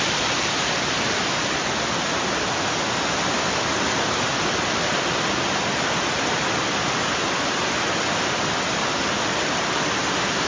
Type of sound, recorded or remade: recorded